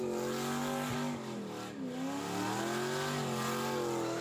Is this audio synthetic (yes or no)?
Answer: no